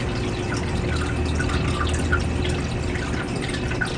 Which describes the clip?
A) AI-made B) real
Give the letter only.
B